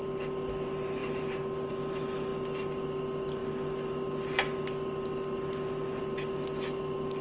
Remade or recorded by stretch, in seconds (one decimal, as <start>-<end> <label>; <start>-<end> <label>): 0.0-7.2 recorded